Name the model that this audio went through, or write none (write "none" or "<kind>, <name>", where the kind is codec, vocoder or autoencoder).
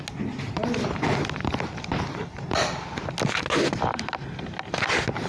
none